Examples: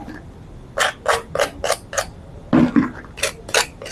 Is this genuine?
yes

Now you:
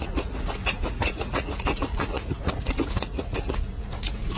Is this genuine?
no